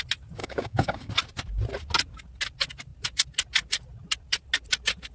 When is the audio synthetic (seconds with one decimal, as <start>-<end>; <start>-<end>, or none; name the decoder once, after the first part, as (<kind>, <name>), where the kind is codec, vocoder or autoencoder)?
0.4-1.1 (codec, DAC)